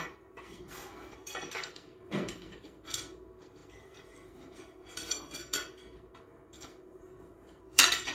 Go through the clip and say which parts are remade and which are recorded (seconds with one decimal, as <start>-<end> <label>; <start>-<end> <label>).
0.0-8.1 remade